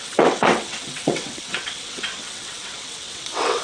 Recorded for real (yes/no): no